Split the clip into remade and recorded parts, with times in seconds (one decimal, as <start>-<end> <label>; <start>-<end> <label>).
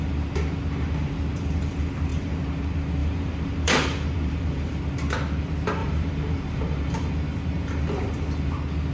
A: 0.0-2.1 recorded; 2.1-2.6 remade; 2.6-3.0 recorded; 3.0-4.8 remade; 4.8-5.8 recorded; 5.8-7.1 remade; 7.1-8.9 recorded